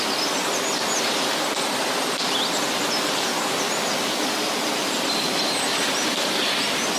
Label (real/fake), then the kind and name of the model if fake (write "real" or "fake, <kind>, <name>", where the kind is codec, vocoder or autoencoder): real